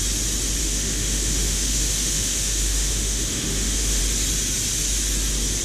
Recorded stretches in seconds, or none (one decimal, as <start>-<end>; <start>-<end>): 0.0-0.6; 4.0-5.6